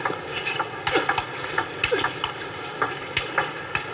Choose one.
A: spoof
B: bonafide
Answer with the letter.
B